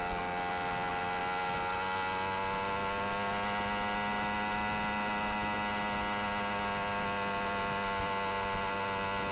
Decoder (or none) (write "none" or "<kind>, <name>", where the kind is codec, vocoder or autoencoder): none